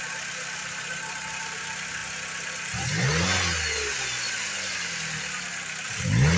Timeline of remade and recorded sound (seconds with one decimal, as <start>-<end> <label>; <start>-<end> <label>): 0.0-6.4 recorded